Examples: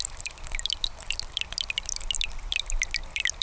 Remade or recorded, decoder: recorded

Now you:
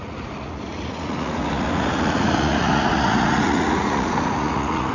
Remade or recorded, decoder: remade, vocoder, Vocos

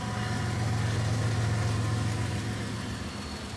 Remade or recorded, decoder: recorded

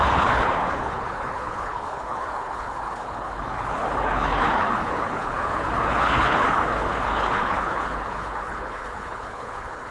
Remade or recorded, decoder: remade, codec, HILCodec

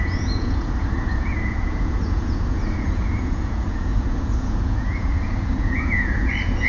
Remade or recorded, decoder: remade, vocoder, Vocos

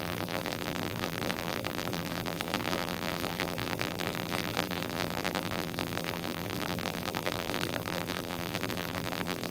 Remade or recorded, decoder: remade, vocoder, BigVGAN v2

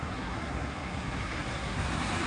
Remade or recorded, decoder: remade, codec, SNAC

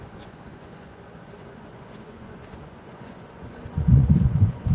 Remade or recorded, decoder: remade, vocoder, Vocos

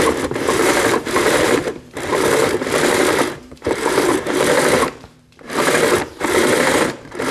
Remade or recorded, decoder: remade, vocoder, BigVGAN v2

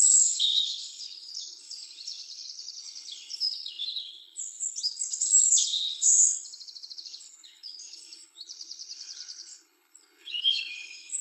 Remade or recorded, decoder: remade, codec, HILCodec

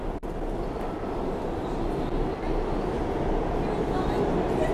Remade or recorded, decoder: recorded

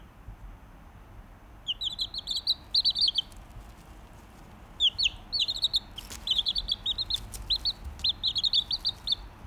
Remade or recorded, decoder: recorded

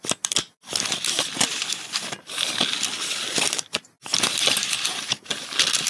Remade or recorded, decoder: recorded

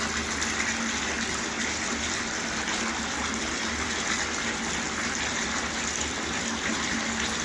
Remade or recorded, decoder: recorded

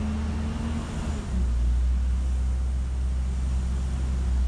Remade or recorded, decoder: recorded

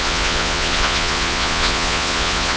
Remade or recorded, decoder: remade, vocoder, Vocos